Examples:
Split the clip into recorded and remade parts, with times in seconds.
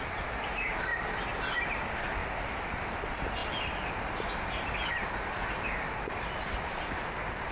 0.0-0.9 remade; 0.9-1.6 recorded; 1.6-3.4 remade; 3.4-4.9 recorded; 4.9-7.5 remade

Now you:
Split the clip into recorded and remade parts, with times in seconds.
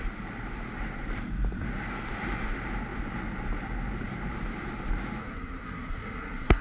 0.0-5.2 recorded; 5.2-6.6 remade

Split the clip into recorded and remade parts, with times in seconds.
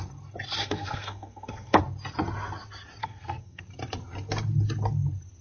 0.0-0.6 recorded; 0.6-1.8 remade; 1.8-3.0 recorded; 3.0-3.6 remade; 3.6-5.4 recorded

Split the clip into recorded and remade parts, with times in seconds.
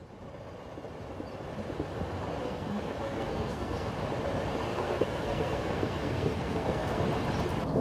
0.0-2.4 recorded; 2.4-3.9 remade; 3.9-4.7 recorded; 4.7-7.0 remade; 7.0-7.8 recorded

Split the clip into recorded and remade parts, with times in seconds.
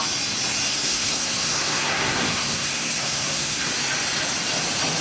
0.0-0.7 recorded; 0.7-3.7 remade; 3.7-5.0 recorded